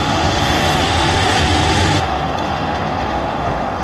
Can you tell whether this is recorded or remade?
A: remade